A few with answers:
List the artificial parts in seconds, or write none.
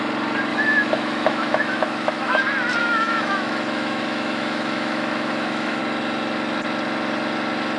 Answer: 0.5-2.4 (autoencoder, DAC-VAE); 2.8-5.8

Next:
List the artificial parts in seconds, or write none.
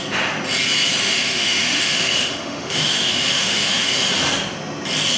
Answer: 1.0-4.1 (autoencoder, DAC-VAE)